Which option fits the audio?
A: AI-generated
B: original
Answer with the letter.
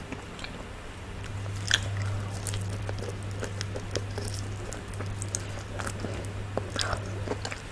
B